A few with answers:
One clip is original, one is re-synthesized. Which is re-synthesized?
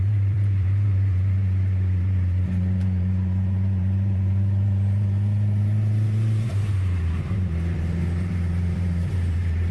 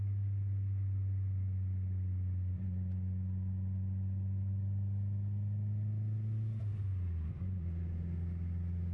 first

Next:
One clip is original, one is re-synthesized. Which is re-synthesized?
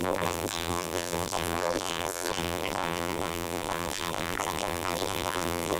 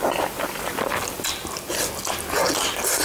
first